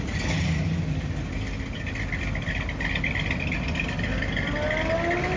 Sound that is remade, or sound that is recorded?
recorded